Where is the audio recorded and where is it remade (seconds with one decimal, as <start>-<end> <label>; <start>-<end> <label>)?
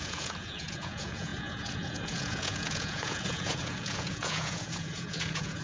0.0-5.6 remade